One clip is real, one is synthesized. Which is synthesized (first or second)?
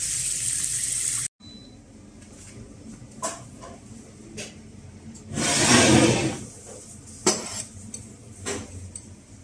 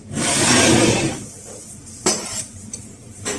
second